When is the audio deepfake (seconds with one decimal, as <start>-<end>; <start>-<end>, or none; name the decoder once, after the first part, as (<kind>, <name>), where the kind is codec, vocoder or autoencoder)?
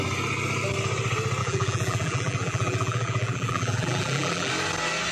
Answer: 1.4-4.5 (vocoder, BigVGAN v2)